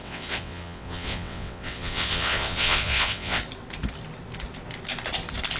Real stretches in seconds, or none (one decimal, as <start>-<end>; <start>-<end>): 3.4-5.6